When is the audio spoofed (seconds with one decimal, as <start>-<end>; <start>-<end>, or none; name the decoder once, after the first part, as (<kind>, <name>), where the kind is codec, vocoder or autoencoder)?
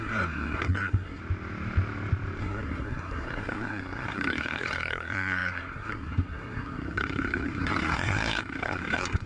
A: 0.0-1.2 (codec, SNAC); 2.4-9.3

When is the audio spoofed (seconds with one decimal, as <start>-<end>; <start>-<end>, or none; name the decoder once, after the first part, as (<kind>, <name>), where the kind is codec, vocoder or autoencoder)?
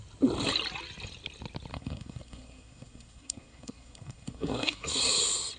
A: 1.7-5.1 (codec, SNAC)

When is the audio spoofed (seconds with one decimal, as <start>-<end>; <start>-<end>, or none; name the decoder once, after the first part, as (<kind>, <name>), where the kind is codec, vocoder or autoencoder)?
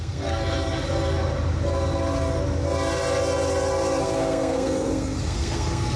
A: 0.0-0.4 (codec, SNAC); 4.0-6.0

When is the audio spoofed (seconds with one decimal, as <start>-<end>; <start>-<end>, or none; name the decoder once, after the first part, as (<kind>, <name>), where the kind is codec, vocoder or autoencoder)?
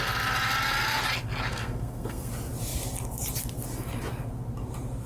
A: 1.5-2.3 (codec, SNAC)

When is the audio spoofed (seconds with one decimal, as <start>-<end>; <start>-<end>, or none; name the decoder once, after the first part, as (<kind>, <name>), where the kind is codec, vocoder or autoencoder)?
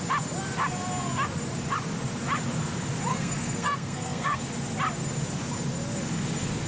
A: 3.1-4.4 (codec, SNAC)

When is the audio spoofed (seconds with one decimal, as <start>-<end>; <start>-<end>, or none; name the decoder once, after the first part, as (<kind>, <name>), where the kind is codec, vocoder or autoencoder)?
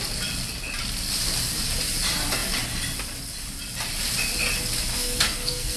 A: 4.9-5.8 (codec, SNAC)